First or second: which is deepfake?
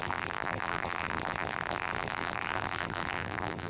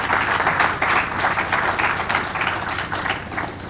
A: first